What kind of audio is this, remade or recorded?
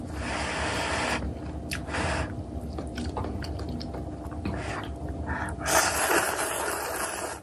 remade